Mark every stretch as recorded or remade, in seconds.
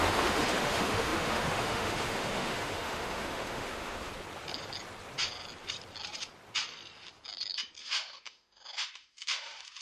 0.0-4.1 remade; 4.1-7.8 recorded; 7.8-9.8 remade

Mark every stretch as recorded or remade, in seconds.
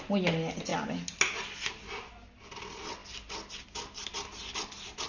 0.0-5.1 recorded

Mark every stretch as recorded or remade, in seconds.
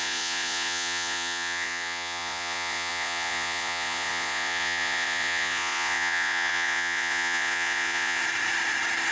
0.0-8.2 remade; 8.2-9.1 recorded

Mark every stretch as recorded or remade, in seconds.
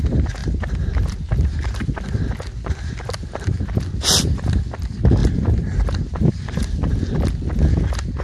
0.0-0.4 recorded; 0.4-1.8 remade; 1.8-5.2 recorded; 5.2-7.1 remade; 7.1-8.2 recorded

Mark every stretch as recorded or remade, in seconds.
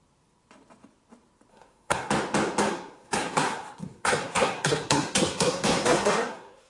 0.0-1.5 recorded; 1.5-2.1 remade; 2.1-2.6 recorded; 2.6-6.7 remade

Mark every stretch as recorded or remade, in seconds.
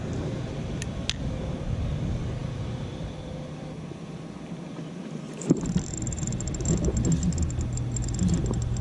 0.0-2.4 recorded; 2.4-7.3 remade; 7.3-8.8 recorded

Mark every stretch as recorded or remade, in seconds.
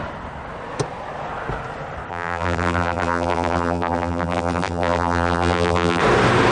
0.0-2.1 recorded; 2.1-6.0 remade; 6.0-6.5 recorded